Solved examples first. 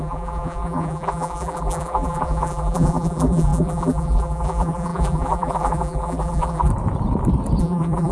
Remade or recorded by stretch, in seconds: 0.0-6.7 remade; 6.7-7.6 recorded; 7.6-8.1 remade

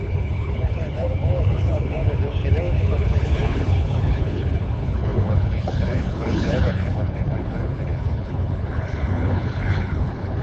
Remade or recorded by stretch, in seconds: 0.0-10.4 remade

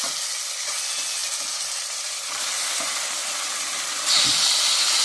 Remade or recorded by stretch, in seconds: 0.0-5.0 recorded